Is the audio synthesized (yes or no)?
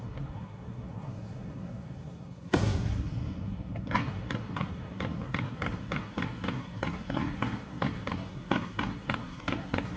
yes